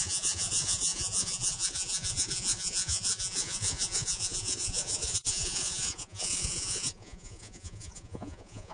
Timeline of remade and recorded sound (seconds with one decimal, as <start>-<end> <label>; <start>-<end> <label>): 0.0-8.7 remade